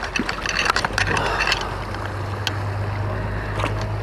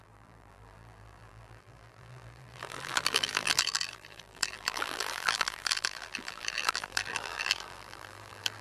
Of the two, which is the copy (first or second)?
second